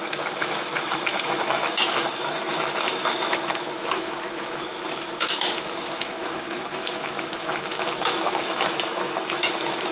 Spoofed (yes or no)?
yes